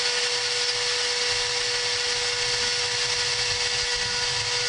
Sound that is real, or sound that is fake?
real